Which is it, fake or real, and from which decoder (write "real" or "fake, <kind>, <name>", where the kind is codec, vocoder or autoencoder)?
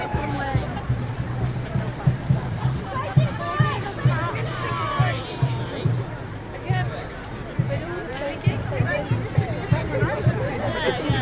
fake, vocoder, BigVGAN v2